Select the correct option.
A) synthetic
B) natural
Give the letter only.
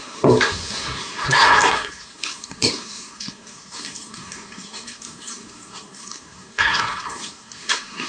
A